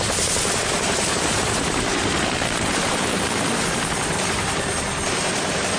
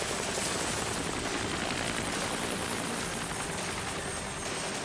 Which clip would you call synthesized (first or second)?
first